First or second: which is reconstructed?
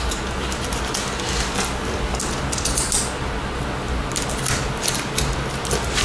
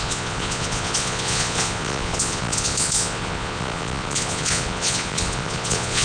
second